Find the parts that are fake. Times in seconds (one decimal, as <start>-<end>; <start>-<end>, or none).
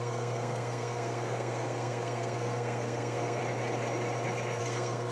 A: 0.0-3.4; 4.6-5.1